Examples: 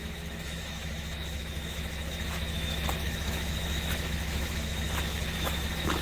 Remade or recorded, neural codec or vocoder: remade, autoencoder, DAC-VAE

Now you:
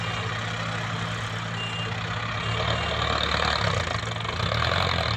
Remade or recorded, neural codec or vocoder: recorded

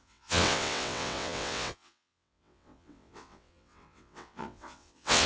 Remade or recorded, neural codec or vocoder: remade, vocoder, WaveNeXt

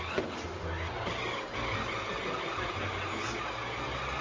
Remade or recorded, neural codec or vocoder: recorded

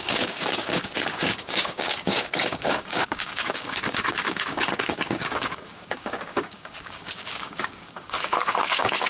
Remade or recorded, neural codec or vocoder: remade, codec, DAC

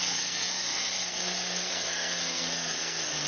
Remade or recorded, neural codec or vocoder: remade, codec, SNAC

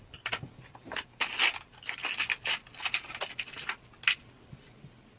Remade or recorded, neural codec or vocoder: recorded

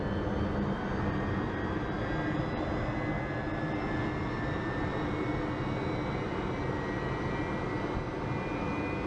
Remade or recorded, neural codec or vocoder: recorded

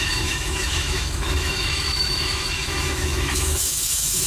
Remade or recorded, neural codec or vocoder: remade, autoencoder, DAC-VAE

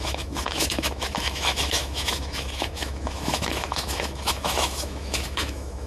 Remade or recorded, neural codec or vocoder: remade, autoencoder, DAC-VAE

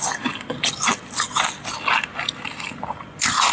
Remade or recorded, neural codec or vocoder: recorded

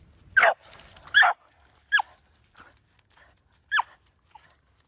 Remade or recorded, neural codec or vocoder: recorded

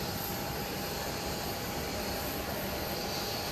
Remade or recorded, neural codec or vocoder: remade, vocoder, BigVGAN v2